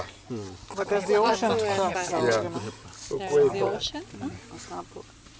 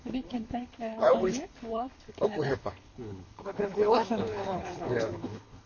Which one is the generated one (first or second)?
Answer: second